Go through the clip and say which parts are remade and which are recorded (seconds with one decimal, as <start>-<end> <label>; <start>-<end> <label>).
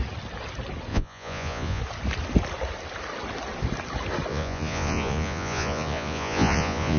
0.0-0.9 recorded; 0.9-1.8 remade; 1.8-4.3 recorded; 4.3-7.0 remade